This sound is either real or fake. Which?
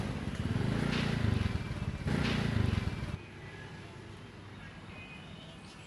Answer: real